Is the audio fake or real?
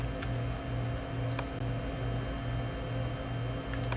real